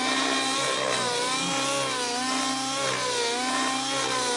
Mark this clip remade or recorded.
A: recorded